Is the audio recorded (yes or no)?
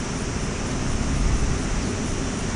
yes